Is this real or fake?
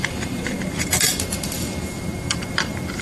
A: fake